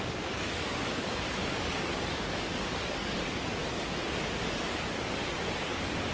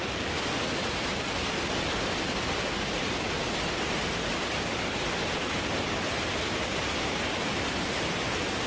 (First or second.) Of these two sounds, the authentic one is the second